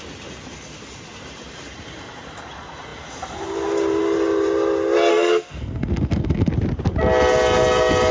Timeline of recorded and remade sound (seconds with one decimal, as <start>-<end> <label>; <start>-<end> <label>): 0.0-5.1 recorded; 5.1-6.5 remade; 6.5-8.1 recorded

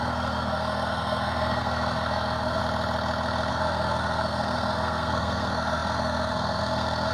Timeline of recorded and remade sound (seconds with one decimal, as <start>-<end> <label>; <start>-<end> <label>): 0.0-2.6 remade; 2.6-3.5 recorded; 3.5-7.1 remade

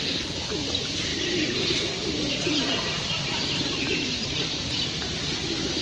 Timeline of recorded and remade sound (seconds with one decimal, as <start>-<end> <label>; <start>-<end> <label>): 0.0-1.1 recorded; 1.1-4.3 remade; 4.3-5.8 recorded

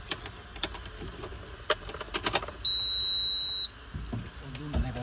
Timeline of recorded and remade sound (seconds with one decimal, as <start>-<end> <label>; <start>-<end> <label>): 0.0-5.0 recorded

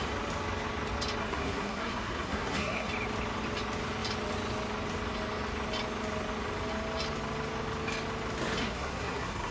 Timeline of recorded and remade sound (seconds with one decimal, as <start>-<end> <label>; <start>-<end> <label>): 0.0-1.2 recorded; 1.2-2.9 remade; 2.9-8.6 recorded; 8.6-9.5 remade